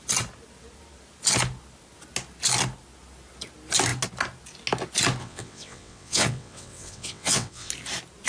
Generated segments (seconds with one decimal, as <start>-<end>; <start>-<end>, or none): 5.2-7.7